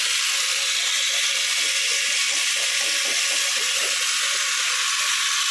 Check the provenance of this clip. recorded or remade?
recorded